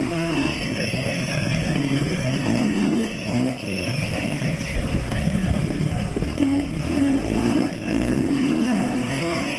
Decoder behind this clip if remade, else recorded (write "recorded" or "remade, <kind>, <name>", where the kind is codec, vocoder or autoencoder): remade, codec, SNAC